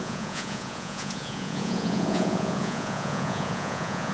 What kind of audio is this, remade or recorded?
remade